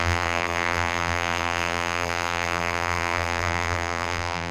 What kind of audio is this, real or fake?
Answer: fake